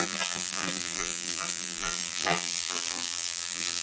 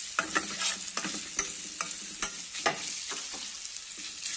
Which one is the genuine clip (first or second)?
second